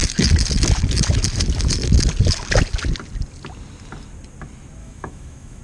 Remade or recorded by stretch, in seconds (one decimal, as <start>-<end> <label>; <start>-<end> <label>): 0.0-4.8 recorded; 4.8-5.6 remade